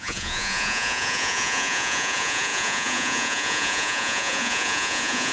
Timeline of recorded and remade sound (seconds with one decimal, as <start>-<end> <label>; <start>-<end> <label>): 0.0-5.3 remade